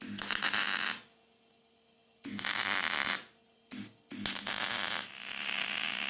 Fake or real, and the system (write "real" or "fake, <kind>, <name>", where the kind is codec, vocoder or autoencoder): real